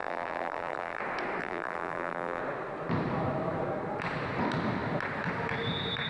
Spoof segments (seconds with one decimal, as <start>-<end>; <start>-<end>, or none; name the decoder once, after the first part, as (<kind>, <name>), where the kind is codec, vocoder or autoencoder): 0.0-1.0 (vocoder, BigVGAN v2); 1.4-2.4